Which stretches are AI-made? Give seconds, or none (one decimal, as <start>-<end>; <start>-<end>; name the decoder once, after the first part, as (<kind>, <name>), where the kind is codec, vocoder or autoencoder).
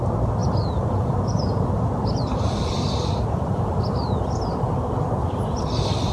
0.4-4.1 (vocoder, BigVGAN v2)